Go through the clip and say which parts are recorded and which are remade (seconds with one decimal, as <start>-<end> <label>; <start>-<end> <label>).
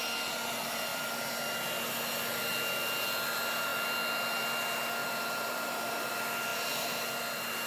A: 0.0-0.9 recorded; 0.9-1.4 remade; 1.4-5.0 recorded; 5.0-6.1 remade; 6.1-6.5 recorded; 6.5-7.2 remade; 7.2-7.7 recorded